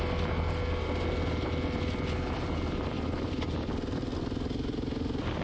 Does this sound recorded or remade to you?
recorded